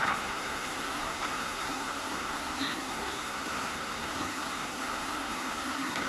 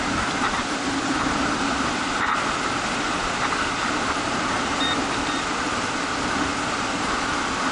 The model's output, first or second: first